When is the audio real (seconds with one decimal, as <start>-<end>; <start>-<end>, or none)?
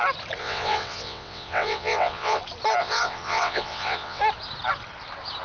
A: 0.0-0.4; 2.4-2.8; 4.2-5.4